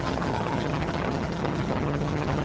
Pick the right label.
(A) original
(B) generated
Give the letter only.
B